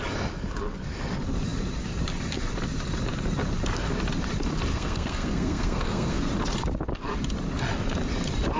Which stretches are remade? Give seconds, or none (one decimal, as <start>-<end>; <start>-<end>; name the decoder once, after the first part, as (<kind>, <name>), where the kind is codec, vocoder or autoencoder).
4.7-6.3 (codec, SNAC)